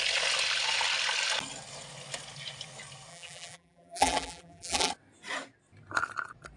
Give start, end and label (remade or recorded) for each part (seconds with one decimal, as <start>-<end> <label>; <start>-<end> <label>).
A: 0.0-3.1 recorded; 3.1-4.9 remade; 4.9-6.6 recorded